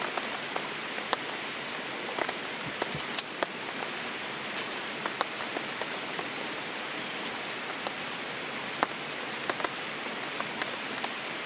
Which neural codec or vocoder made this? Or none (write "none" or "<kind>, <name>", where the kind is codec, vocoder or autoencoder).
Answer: none